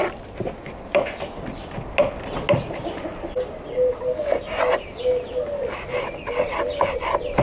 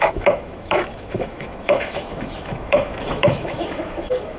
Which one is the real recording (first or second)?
first